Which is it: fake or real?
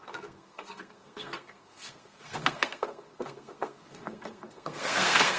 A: fake